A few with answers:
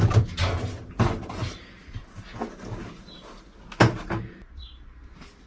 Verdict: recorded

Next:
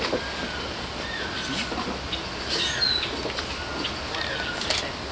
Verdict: recorded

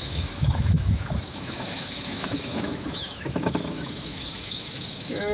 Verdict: remade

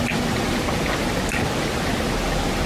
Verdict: recorded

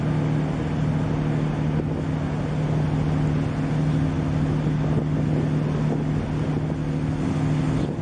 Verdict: recorded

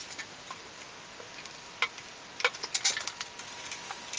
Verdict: recorded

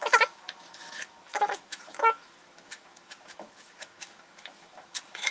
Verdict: remade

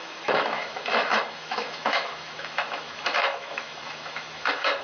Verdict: remade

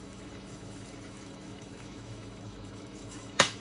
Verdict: remade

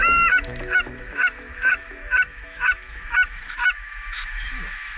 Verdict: remade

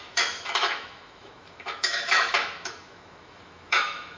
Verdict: remade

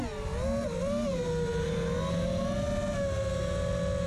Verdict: recorded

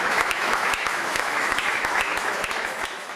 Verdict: remade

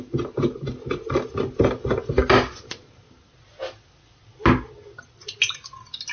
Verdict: recorded